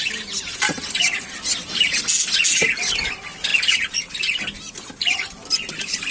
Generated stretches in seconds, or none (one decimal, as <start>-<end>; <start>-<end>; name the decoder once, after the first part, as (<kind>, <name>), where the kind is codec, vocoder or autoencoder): 3.5-4.1 (vocoder, BigVGAN v2)